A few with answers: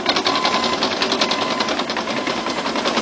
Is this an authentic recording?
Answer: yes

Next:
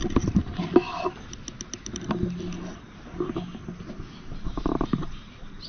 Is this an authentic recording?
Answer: yes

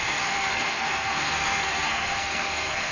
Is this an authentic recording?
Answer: no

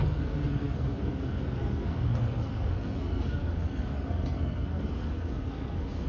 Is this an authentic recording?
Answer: no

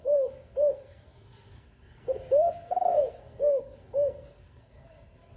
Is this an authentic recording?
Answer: no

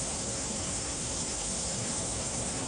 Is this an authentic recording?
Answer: no